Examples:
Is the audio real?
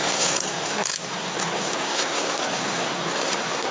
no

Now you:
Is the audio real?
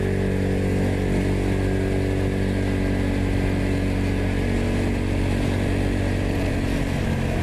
yes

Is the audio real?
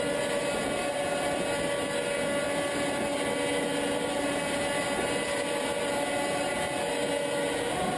yes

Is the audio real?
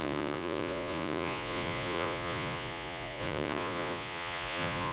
no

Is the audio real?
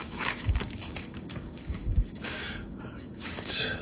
no